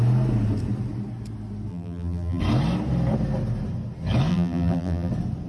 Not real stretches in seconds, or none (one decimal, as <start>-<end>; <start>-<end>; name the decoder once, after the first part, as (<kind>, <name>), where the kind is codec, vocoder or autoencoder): 1.7-2.4 (vocoder, BigVGAN v2); 4.3-5.1